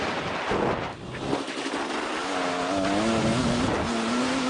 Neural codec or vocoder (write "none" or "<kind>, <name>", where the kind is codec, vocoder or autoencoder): none